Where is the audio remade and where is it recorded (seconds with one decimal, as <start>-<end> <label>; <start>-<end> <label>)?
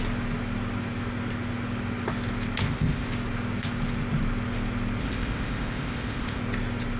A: 0.0-2.6 recorded; 2.6-3.1 remade; 3.1-5.0 recorded; 5.0-6.4 remade; 6.4-7.0 recorded